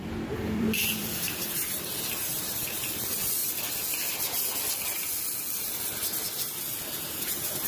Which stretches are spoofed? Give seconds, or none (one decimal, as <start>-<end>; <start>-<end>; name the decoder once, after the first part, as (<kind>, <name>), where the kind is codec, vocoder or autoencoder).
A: 0.0-3.4 (vocoder, BigVGAN v2); 7.0-7.7